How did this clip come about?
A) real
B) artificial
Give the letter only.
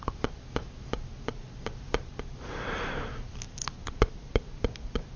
A